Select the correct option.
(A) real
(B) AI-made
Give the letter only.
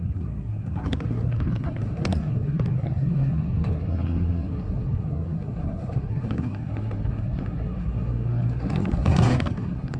B